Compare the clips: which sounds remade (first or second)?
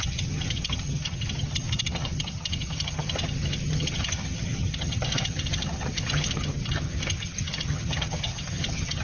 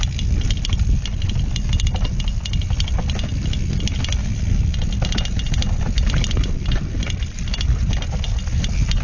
first